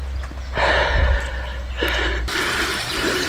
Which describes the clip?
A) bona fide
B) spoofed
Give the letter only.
A